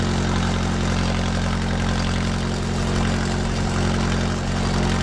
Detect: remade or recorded recorded